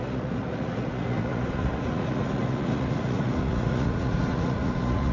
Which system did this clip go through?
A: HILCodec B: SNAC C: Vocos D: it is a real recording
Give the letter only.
C